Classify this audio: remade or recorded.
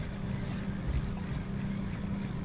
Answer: recorded